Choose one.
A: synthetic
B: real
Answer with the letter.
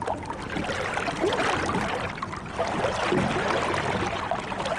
B